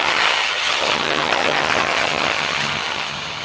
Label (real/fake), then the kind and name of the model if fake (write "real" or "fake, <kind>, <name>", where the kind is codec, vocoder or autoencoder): fake, vocoder, HiFi-GAN